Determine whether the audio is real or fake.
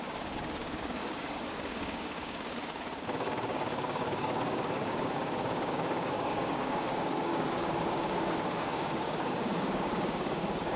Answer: fake